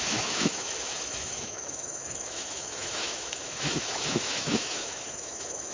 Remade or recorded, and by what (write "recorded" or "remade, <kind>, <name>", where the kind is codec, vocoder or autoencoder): remade, autoencoder, DAC-VAE